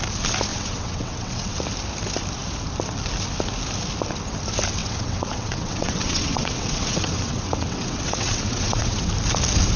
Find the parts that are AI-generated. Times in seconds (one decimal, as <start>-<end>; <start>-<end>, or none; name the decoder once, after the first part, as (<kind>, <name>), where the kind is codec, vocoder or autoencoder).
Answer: 0.5-1.6 (vocoder, WaveNeXt); 4.8-9.1